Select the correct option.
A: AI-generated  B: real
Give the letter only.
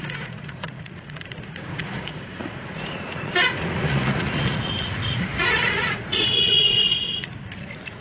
A